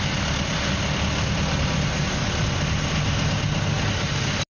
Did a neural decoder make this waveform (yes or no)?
no